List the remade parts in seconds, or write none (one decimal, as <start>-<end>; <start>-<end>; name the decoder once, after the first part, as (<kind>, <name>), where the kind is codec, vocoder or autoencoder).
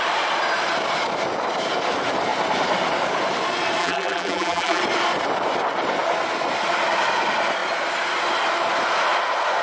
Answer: 3.8-4.8 (vocoder, BigVGAN v2)